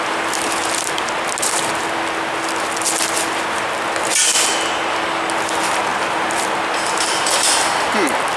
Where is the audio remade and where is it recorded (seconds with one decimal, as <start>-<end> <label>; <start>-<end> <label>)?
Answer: 0.0-5.9 recorded; 5.9-7.6 remade; 7.6-8.4 recorded